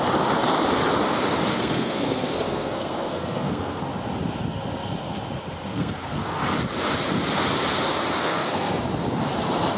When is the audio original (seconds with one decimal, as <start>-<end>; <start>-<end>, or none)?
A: 0.0-1.5; 3.8-5.7; 6.4-8.2; 8.8-9.8